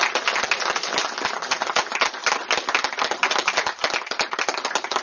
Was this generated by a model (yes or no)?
no